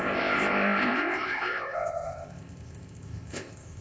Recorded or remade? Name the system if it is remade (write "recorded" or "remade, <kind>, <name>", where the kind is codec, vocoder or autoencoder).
remade, codec, ZipCodec